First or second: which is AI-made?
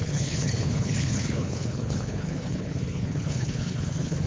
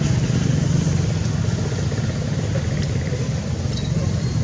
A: first